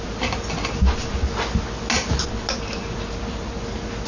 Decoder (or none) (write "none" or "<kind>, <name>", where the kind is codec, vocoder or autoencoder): none